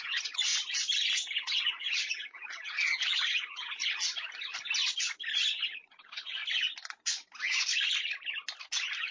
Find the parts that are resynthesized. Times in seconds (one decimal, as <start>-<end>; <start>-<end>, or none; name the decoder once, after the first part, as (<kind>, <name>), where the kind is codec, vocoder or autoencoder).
0.0-0.5 (vocoder, Vocos); 1.4-3.8; 5.4-6.4